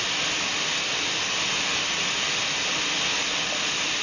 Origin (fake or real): real